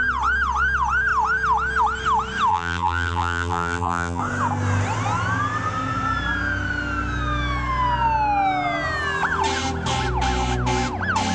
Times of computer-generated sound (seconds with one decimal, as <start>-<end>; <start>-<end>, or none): 2.5-4.2